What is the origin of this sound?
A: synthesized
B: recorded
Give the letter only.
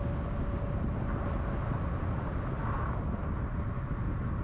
B